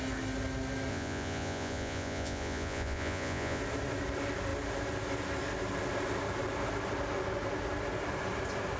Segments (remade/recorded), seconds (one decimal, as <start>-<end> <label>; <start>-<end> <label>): 0.0-0.9 recorded; 0.9-3.6 remade; 3.6-8.8 recorded